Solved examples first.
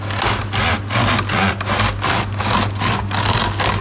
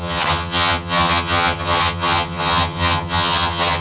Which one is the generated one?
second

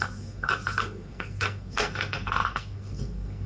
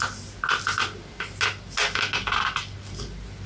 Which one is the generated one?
first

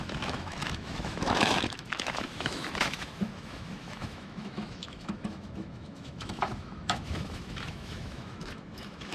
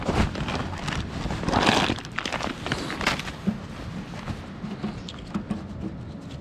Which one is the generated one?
first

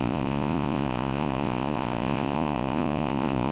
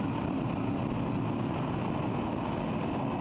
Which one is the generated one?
first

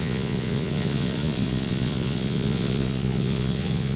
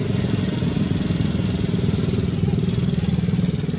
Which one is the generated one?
first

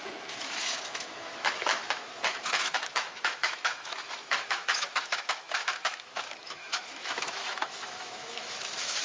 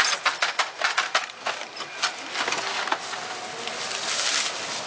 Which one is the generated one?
first